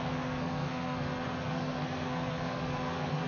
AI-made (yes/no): yes